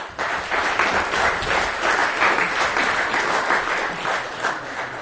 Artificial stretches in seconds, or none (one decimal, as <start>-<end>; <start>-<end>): none